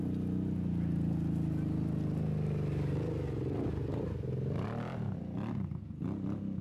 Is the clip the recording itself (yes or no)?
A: yes